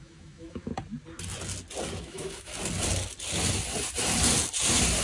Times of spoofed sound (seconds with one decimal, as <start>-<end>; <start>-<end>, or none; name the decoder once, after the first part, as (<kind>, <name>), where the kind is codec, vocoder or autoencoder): 0.0-0.7 (autoencoder, DAC-VAE); 2.0-2.5